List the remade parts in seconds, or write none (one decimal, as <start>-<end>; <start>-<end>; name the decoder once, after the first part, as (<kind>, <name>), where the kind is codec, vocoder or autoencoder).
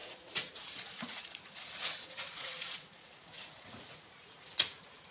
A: 0.0-5.1 (vocoder, Vocos)